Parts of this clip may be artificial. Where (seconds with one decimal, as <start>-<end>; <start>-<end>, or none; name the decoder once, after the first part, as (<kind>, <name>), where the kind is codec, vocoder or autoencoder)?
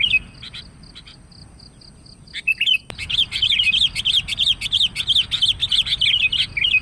none